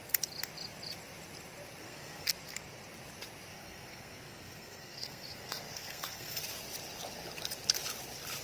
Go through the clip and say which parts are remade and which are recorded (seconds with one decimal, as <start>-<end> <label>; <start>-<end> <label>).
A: 0.0-1.8 recorded; 1.8-2.3 remade; 2.3-3.5 recorded; 3.5-6.4 remade; 6.4-8.4 recorded